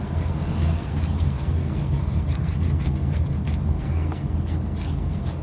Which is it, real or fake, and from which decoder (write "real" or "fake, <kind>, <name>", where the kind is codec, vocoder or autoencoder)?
fake, codec, SNAC